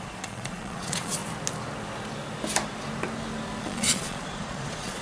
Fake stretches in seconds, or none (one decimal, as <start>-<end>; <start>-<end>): 0.0-1.2; 3.6-5.0